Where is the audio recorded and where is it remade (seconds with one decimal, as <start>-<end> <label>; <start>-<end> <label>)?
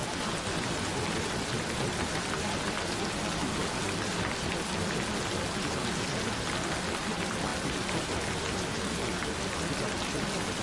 0.0-10.6 recorded